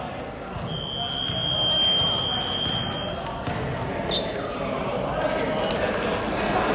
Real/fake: real